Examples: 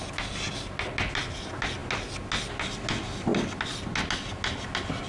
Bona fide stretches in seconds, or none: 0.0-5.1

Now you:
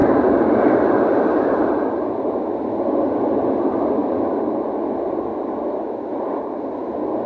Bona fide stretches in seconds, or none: 0.9-7.3

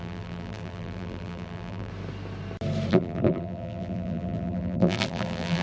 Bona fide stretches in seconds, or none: 1.9-2.9

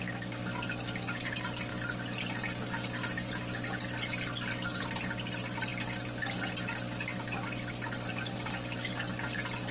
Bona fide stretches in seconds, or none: 0.0-9.7

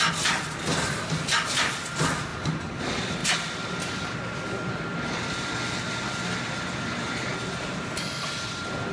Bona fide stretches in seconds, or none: 0.0-8.9

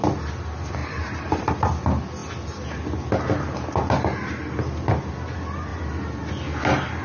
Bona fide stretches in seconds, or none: 0.0-0.8; 1.5-7.0

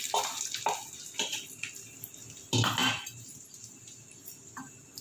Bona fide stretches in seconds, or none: 0.0-2.8; 4.3-5.0

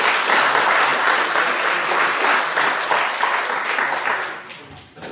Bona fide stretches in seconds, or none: 0.0-5.1